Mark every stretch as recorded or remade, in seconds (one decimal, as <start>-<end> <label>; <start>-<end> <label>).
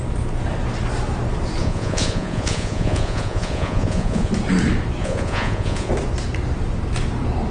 0.0-1.6 recorded; 1.6-4.3 remade; 4.3-5.0 recorded; 5.0-5.9 remade; 5.9-7.5 recorded